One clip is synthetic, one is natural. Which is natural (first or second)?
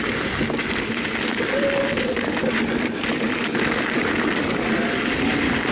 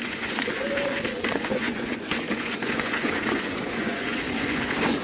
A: first